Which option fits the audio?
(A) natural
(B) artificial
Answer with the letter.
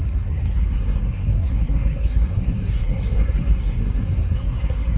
B